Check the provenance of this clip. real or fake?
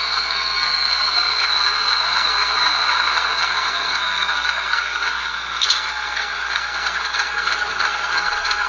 fake